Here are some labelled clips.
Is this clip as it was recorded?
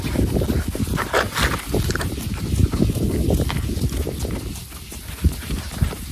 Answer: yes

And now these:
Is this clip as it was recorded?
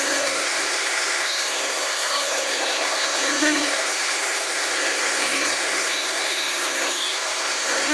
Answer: no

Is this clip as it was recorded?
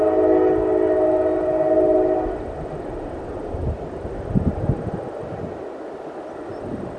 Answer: yes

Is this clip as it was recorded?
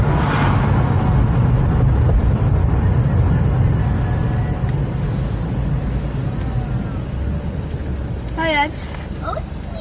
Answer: yes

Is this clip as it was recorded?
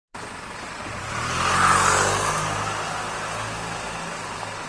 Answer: yes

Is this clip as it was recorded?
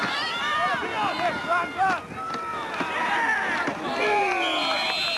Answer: yes